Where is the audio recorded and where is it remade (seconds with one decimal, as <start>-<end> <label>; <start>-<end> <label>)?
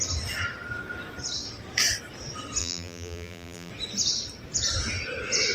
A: 0.0-2.6 recorded; 2.6-3.7 remade; 3.7-5.5 recorded